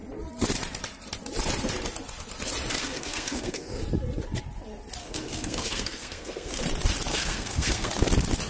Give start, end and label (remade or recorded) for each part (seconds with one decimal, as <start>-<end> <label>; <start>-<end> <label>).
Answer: 0.0-2.8 recorded; 2.8-3.8 remade; 3.8-5.0 recorded; 5.0-6.6 remade; 6.6-7.1 recorded; 7.1-7.9 remade; 7.9-8.5 recorded